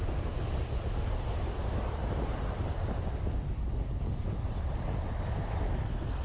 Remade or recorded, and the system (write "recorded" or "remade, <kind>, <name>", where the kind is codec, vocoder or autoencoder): recorded